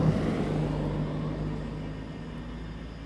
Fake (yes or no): no